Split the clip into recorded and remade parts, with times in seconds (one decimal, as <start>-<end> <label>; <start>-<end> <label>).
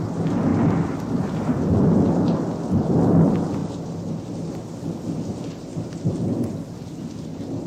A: 0.0-7.7 recorded